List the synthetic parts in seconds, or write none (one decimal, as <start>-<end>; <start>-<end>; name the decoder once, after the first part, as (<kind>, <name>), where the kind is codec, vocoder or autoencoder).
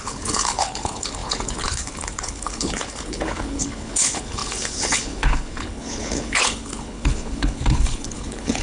0.0-8.6 (codec, HILCodec)